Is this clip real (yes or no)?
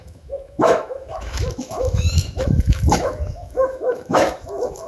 no